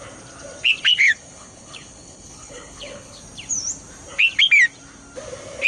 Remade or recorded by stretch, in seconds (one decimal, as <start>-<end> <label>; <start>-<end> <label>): 0.0-0.9 recorded; 0.9-3.2 remade; 3.2-5.7 recorded